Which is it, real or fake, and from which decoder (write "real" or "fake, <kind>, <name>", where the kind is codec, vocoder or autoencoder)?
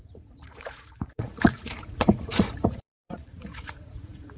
fake, vocoder, Vocos